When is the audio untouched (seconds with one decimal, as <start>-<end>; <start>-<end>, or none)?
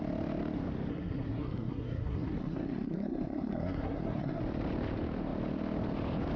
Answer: 0.0-0.9; 4.4-6.4